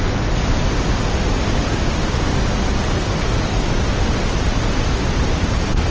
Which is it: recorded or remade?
recorded